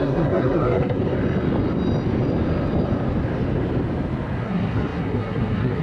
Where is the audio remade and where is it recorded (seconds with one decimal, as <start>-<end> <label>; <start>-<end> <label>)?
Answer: 0.0-1.0 remade; 1.0-4.4 recorded; 4.4-5.8 remade